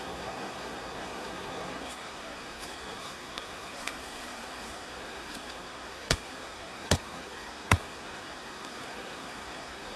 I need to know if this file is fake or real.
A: fake